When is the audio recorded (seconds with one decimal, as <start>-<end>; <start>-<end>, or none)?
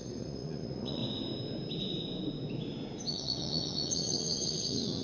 1.0-3.1